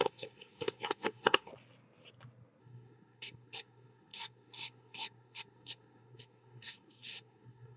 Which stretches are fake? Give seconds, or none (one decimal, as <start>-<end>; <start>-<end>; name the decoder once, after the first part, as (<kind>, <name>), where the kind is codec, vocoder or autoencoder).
0.0-1.5 (codec, SNAC); 2.6-7.8